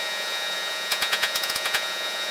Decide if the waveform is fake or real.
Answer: fake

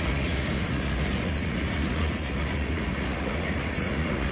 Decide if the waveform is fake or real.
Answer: fake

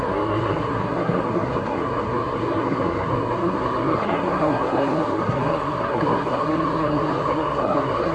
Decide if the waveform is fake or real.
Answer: fake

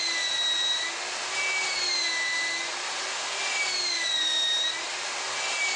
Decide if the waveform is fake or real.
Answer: real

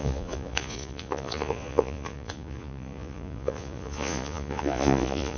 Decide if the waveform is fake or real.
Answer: fake